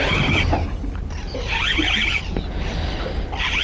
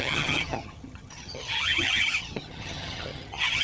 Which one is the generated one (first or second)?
second